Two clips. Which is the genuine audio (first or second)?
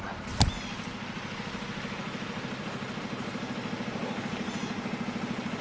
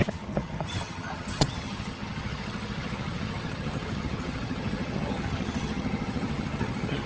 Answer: first